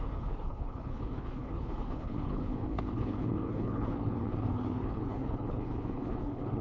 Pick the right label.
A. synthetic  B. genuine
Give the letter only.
A